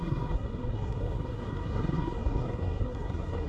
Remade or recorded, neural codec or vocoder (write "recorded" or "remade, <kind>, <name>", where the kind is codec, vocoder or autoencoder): remade, codec, SNAC